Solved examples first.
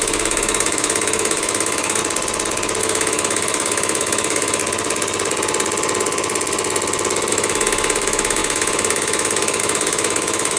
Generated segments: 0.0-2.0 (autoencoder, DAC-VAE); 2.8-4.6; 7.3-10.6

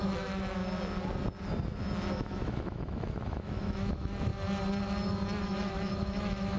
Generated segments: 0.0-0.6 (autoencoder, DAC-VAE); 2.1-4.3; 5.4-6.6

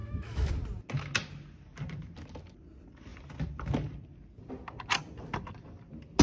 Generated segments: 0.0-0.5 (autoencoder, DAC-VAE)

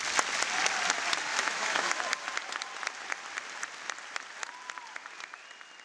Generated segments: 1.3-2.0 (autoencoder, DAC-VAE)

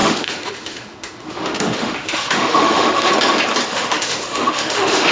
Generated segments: 0.0-3.1 (autoencoder, DAC-VAE); 3.7-5.1

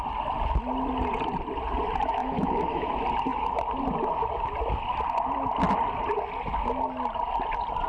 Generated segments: 2.2-2.9 (autoencoder, DAC-VAE)